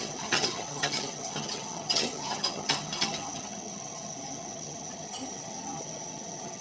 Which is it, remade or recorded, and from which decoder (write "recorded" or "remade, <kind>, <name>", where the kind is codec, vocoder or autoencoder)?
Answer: remade, vocoder, HiFi-GAN